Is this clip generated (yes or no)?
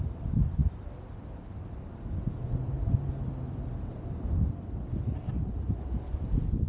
no